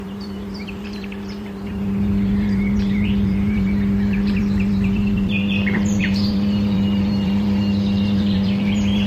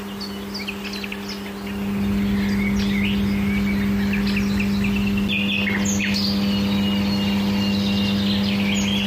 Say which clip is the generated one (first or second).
first